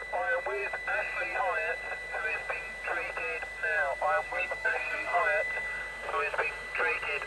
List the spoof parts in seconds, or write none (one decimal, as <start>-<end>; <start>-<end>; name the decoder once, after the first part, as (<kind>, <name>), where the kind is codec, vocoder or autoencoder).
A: 4.3-5.2 (codec, SNAC)